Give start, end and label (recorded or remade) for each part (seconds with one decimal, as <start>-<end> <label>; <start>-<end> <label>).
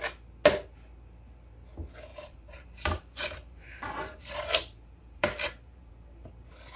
0.0-2.1 recorded; 2.1-5.9 remade; 5.9-6.8 recorded